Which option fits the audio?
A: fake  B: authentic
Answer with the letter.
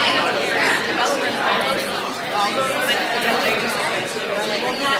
B